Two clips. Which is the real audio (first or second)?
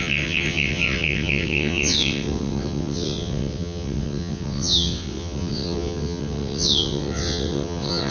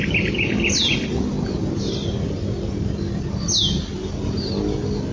second